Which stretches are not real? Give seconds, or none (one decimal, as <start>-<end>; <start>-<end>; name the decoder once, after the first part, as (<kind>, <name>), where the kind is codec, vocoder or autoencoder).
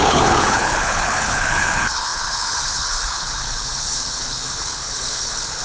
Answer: 0.0-5.6 (codec, HILCodec)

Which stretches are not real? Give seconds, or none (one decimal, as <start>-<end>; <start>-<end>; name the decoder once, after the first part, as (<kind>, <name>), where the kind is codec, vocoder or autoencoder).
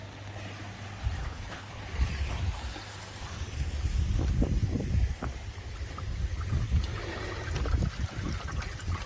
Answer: 1.2-1.8 (codec, HILCodec)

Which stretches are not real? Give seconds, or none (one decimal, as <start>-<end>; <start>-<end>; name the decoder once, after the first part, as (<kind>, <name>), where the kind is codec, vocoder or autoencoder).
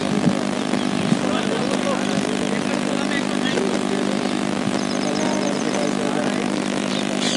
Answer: none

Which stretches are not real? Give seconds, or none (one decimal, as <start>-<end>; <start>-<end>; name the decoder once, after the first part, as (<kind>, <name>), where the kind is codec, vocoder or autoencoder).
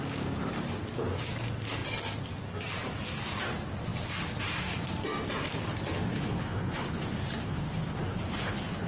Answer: 6.1-7.0 (codec, HILCodec); 7.4-8.9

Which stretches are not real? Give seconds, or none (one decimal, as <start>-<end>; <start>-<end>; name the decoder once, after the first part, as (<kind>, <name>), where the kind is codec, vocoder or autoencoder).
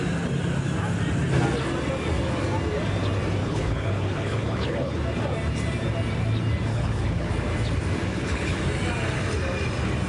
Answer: 3.4-5.0 (codec, HILCodec); 6.7-7.3; 8.1-8.6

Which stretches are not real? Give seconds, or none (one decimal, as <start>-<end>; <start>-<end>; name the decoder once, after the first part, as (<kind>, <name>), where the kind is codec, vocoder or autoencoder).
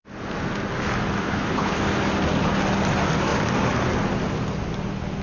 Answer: 1.2-1.8 (codec, HILCodec)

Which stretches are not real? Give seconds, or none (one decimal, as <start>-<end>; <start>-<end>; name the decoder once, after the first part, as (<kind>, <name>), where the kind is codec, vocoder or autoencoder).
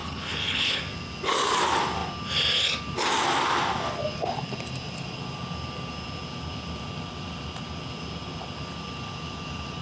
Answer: 0.0-0.8 (codec, HILCodec)